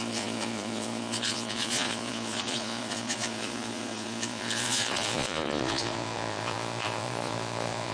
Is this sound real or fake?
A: fake